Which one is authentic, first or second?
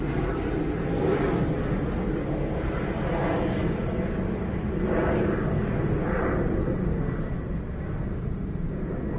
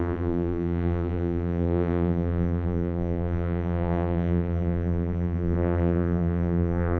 first